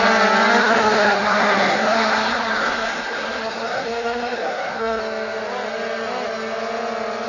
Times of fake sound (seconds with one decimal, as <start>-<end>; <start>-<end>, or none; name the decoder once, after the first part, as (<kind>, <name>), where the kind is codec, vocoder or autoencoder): 0.6-5.0 (codec, SNAC)